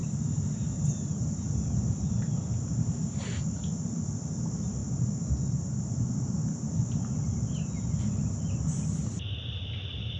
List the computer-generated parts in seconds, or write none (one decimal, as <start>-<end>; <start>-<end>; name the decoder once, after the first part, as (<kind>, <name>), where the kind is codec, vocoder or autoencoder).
0.0-0.9 (vocoder, BigVGAN v2)